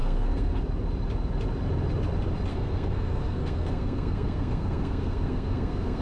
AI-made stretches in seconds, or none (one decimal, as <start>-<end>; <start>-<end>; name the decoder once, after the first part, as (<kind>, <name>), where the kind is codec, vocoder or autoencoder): 0.0-0.6 (codec, SNAC); 2.5-6.0